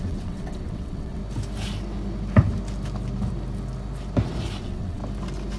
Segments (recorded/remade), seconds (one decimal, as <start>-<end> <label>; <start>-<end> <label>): 0.0-1.2 remade; 1.2-4.6 recorded; 4.6-5.0 remade; 5.0-5.6 recorded